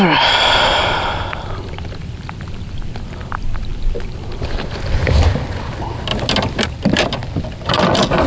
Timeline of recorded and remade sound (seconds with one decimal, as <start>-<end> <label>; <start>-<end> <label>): 0.0-8.3 recorded